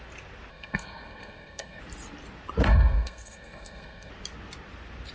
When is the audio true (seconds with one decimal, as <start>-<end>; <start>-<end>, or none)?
0.0-0.5; 1.8-2.7; 4.1-5.1